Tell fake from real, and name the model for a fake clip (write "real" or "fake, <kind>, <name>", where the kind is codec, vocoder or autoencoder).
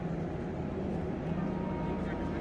real